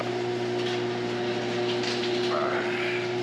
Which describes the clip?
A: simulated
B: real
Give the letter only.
B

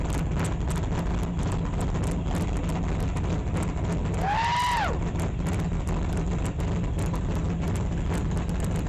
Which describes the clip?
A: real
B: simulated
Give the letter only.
A